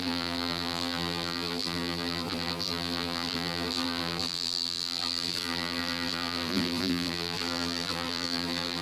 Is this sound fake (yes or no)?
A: yes